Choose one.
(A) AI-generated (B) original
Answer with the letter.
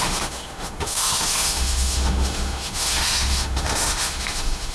A